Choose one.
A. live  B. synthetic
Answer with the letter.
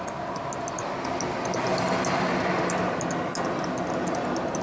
A